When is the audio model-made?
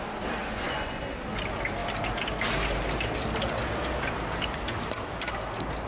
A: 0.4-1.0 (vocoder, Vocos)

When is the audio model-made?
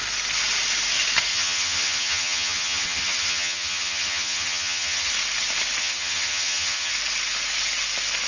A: 1.3-5.1 (vocoder, HiFi-GAN); 5.8-6.9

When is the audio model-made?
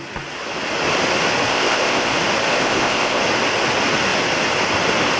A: 1.5-2.1 (codec, ZipCodec); 2.5-3.2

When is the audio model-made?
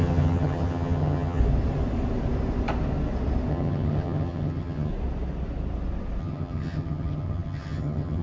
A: 0.0-1.4 (vocoder, HiFi-GAN); 3.5-4.9; 6.2-8.2